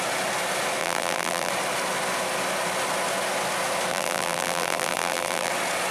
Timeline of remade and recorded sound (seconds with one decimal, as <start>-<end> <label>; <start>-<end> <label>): 0.0-0.8 recorded; 0.8-1.5 remade; 1.5-3.9 recorded; 3.9-5.5 remade; 5.5-5.9 recorded